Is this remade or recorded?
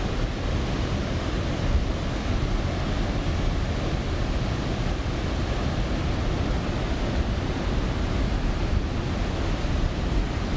recorded